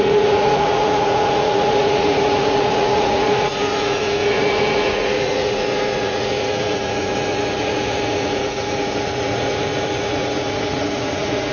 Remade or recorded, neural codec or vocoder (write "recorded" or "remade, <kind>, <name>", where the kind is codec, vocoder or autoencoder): remade, vocoder, Vocos